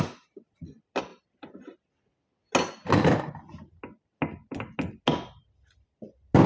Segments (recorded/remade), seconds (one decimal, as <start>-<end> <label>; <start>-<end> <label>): 0.0-6.5 recorded